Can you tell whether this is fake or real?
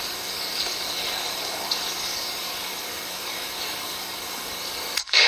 fake